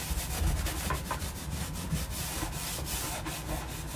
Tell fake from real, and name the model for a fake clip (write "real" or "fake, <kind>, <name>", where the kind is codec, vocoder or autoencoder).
real